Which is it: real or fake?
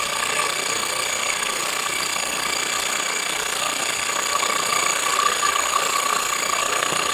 fake